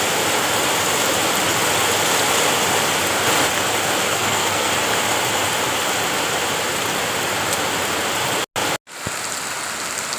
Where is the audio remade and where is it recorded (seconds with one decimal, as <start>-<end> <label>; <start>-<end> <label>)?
0.0-4.1 recorded; 4.1-4.7 remade; 4.7-10.2 recorded